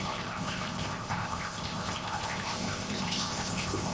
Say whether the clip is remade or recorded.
remade